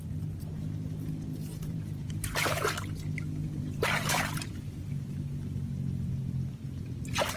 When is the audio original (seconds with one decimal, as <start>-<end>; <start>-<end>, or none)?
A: 0.0-1.5; 2.1-3.4; 4.5-7.4